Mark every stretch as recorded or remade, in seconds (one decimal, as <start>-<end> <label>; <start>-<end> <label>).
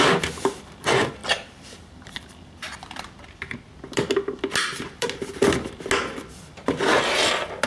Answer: 0.0-1.2 recorded; 1.2-5.8 remade; 5.8-7.7 recorded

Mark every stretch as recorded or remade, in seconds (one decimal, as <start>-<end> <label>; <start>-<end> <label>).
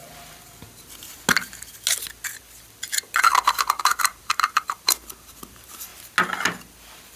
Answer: 0.0-3.8 recorded; 3.8-5.9 remade; 5.9-7.2 recorded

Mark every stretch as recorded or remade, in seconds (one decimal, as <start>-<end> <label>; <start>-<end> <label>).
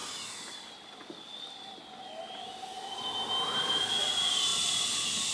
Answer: 0.0-5.3 recorded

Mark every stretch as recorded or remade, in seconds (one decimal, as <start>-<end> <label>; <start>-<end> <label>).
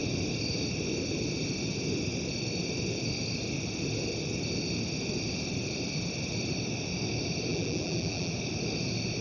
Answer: 0.0-7.5 recorded; 7.5-8.3 remade; 8.3-9.2 recorded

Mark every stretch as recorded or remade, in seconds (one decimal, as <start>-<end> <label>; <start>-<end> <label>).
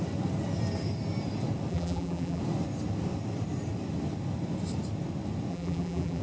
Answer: 0.0-1.7 recorded; 1.7-2.4 remade; 2.4-5.5 recorded; 5.5-6.2 remade